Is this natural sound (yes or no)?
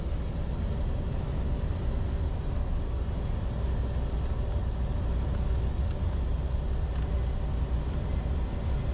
yes